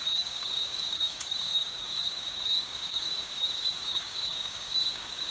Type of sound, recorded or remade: remade